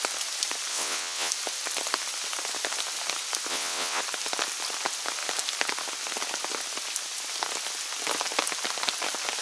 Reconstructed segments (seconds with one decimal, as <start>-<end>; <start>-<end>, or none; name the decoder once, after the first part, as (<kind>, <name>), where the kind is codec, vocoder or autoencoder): 0.7-1.3 (vocoder, WaveNeXt); 3.5-4.0